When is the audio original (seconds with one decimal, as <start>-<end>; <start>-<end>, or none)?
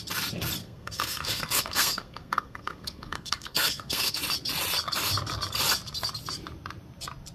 0.0-0.6; 4.2-7.3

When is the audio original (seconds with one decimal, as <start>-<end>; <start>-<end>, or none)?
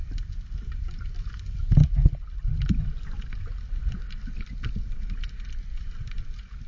0.0-6.7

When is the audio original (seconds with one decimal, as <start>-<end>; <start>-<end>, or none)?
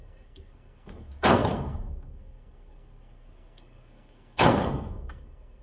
none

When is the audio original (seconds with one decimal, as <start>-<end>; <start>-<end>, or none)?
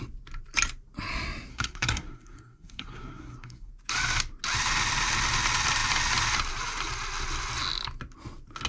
0.0-1.5; 3.7-8.7